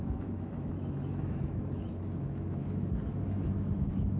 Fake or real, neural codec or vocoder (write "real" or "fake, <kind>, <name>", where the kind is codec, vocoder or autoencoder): fake, autoencoder, DAC-VAE